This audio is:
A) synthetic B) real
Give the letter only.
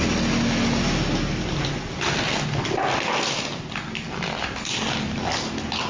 B